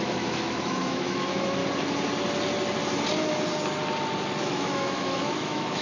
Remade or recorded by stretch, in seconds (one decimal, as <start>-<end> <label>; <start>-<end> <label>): 0.0-1.6 remade; 1.6-4.4 recorded; 4.4-5.8 remade